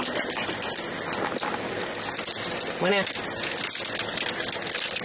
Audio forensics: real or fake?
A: real